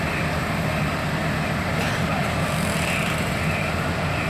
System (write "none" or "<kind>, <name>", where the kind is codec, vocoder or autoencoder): none